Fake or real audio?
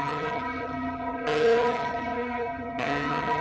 fake